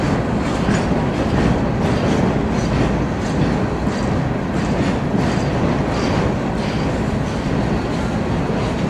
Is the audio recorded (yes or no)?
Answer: yes